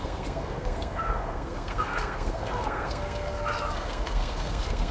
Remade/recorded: remade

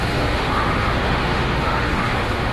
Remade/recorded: remade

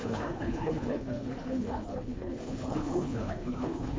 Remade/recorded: remade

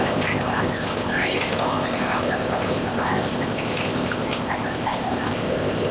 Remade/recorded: remade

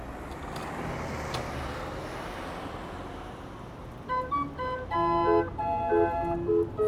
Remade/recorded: recorded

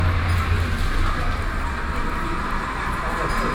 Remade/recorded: recorded